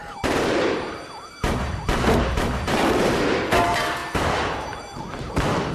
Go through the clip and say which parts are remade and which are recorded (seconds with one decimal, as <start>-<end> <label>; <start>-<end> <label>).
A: 0.0-3.4 remade; 3.4-4.0 recorded; 4.0-5.3 remade; 5.3-5.7 recorded